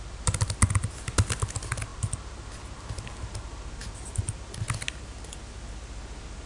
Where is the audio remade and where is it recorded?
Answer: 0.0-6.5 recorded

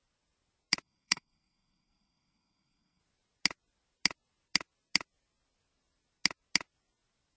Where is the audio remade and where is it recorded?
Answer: 0.0-0.8 recorded; 0.8-3.0 remade; 3.0-7.4 recorded

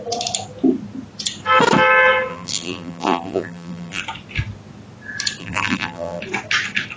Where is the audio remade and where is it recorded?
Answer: 0.0-2.3 recorded; 2.3-4.0 remade; 4.0-5.4 recorded; 5.4-6.2 remade; 6.2-7.0 recorded